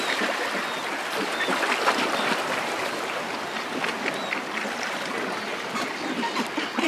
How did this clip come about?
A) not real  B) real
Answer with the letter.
B